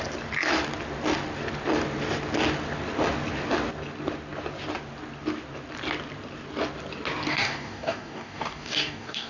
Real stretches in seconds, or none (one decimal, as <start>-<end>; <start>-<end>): 0.0-7.3